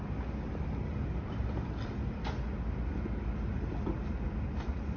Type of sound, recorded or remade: recorded